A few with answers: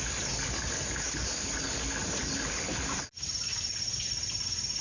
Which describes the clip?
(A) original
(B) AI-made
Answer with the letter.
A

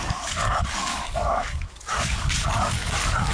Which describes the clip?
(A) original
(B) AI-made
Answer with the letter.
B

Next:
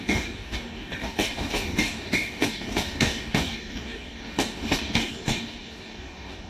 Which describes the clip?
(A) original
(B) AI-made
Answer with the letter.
B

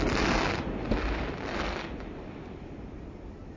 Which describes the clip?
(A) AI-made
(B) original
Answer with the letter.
B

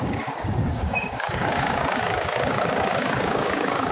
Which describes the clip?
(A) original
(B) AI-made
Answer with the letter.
B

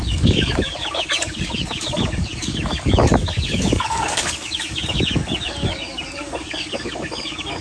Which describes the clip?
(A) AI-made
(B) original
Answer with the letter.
A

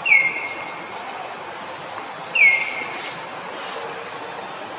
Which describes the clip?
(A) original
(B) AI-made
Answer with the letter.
A